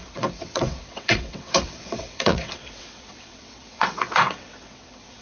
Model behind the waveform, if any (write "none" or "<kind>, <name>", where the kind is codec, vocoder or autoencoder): vocoder, WaveNeXt